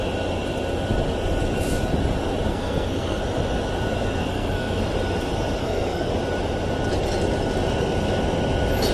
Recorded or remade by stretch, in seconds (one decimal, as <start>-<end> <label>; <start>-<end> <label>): 0.0-2.5 recorded; 2.5-3.2 remade; 3.2-4.2 recorded; 4.2-4.8 remade; 4.8-5.6 recorded; 5.6-6.1 remade; 6.1-8.9 recorded